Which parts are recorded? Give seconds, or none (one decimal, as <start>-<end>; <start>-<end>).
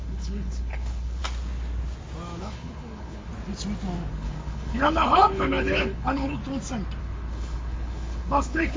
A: 1.2-2.4; 3.3-4.1; 6.4-7.0